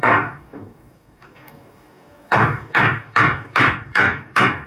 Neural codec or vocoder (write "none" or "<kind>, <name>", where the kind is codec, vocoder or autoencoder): codec, DAC